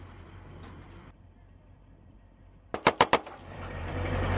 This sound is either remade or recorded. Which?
remade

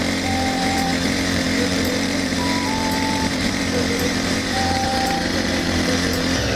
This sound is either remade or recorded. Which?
remade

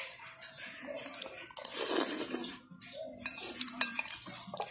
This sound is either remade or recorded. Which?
recorded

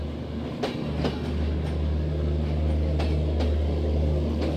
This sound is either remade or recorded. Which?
recorded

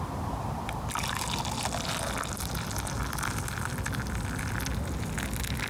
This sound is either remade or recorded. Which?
recorded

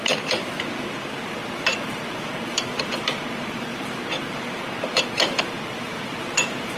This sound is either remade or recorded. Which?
remade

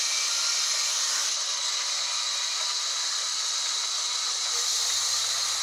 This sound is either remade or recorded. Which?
recorded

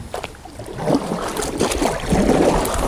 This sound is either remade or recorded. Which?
recorded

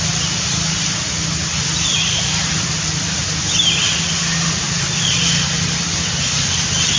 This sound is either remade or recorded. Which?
recorded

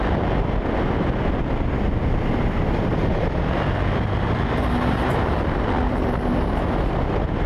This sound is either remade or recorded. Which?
recorded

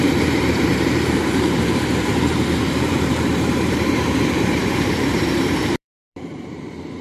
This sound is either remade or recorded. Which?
remade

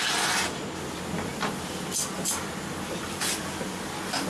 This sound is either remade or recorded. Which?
remade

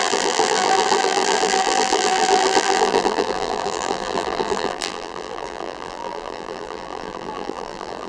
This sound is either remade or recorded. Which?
remade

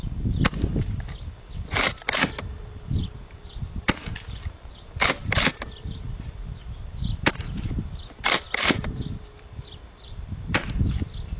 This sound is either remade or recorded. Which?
remade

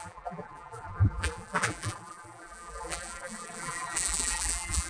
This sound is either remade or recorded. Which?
remade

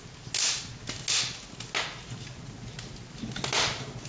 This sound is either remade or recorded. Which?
recorded